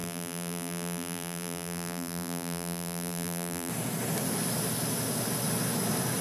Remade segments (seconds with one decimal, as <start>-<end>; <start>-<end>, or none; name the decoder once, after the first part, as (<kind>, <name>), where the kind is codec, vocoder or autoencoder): 0.0-3.7 (vocoder, BigVGAN v2)